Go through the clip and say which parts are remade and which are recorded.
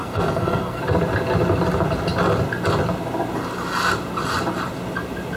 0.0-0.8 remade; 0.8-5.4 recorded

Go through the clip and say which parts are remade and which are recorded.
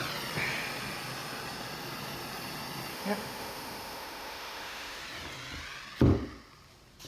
0.0-2.9 recorded; 2.9-5.0 remade; 5.0-7.1 recorded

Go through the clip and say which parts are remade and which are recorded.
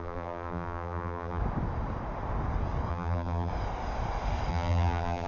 0.0-1.4 remade; 1.4-2.9 recorded; 2.9-3.5 remade; 3.5-4.5 recorded; 4.5-5.3 remade